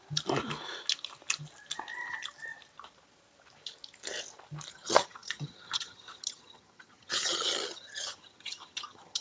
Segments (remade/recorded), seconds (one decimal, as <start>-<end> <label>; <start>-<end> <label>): 0.0-4.7 recorded; 4.7-9.2 remade